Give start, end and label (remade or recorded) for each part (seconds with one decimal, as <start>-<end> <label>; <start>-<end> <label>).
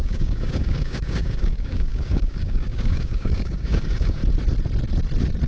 0.0-4.2 remade; 4.2-5.5 recorded